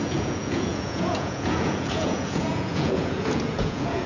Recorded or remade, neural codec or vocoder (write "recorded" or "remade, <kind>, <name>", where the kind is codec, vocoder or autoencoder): remade, vocoder, Vocos